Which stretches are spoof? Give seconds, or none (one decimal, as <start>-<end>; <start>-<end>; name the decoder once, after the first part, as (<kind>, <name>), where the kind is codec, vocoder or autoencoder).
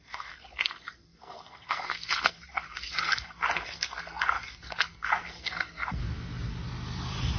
0.0-6.0 (codec, SNAC)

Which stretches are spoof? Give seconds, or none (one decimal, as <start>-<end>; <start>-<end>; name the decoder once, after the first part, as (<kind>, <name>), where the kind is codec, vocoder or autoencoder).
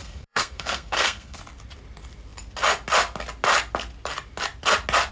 0.0-1.4 (codec, SNAC)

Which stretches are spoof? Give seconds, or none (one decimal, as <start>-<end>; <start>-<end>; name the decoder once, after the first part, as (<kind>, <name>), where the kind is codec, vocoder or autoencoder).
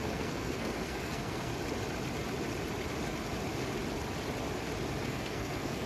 0.0-1.5 (codec, SNAC); 5.0-5.9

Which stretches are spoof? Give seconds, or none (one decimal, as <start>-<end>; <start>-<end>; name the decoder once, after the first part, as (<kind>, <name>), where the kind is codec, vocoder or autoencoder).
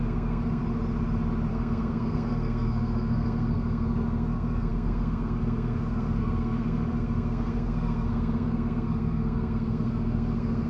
0.0-0.6 (codec, SNAC); 1.5-10.7